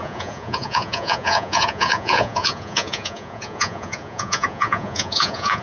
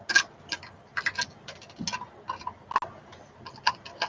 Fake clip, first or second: first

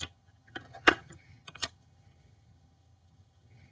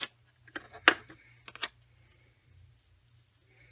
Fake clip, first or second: first